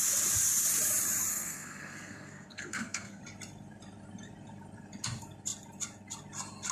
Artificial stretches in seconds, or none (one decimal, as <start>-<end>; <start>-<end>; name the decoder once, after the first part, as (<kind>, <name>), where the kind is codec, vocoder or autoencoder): 1.3-3.2 (codec, SNAC)